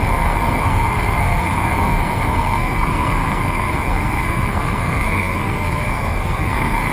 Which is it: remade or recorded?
remade